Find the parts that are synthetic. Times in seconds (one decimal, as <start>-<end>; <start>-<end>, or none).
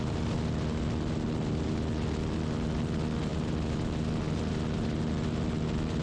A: none